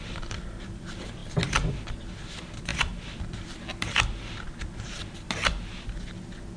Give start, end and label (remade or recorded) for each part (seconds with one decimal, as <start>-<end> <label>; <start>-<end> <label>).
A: 0.0-1.2 remade; 1.2-1.7 recorded; 1.7-6.6 remade